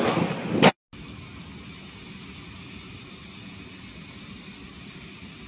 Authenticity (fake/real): real